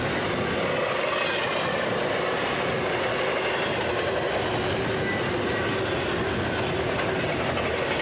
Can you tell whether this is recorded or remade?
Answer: recorded